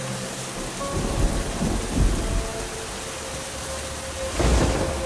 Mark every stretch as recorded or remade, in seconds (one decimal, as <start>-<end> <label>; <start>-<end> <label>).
0.0-5.1 recorded